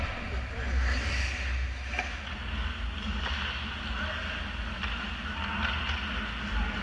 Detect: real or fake real